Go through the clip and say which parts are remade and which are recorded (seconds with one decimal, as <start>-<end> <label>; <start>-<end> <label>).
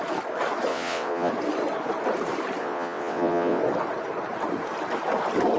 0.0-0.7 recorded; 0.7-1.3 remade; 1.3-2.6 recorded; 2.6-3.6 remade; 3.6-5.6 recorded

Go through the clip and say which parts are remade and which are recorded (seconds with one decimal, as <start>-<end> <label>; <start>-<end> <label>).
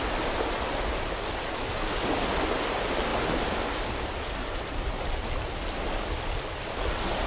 0.0-7.3 recorded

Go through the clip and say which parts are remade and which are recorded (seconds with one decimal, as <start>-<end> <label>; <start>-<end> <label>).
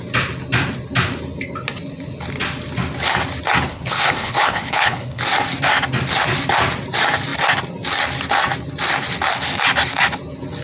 0.0-3.7 recorded; 3.7-5.2 remade; 5.2-10.6 recorded